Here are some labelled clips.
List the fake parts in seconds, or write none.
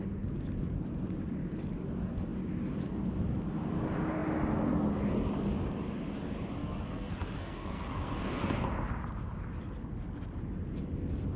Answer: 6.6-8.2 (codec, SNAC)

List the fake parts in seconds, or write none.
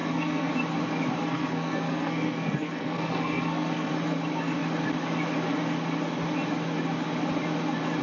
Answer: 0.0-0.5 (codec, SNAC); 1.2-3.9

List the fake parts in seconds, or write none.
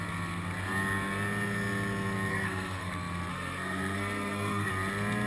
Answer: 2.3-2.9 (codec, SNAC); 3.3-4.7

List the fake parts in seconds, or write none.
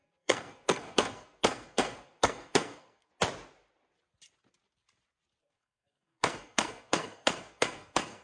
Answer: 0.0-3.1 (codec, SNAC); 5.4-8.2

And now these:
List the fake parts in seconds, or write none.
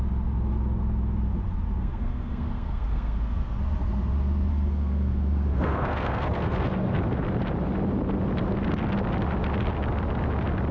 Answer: 1.8-3.6 (codec, SNAC); 4.5-7.0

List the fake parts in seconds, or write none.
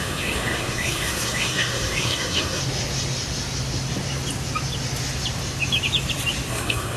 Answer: 0.0-2.6 (codec, SNAC); 6.5-7.0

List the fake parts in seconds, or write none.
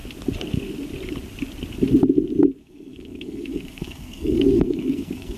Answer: 2.6-5.4 (codec, SNAC)